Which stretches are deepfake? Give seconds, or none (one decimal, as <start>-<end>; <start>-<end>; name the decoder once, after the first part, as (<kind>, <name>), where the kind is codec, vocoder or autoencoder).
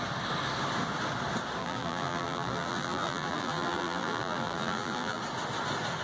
1.6-5.2 (vocoder, BigVGAN v2)